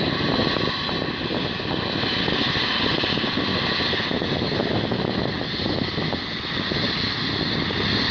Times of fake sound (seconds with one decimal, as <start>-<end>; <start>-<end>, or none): none